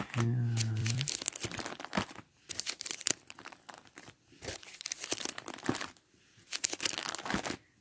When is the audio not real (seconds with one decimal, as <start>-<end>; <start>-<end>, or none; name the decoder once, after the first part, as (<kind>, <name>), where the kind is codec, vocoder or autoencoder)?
0.8-5.5 (vocoder, BigVGAN v2)